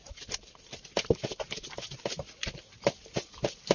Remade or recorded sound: recorded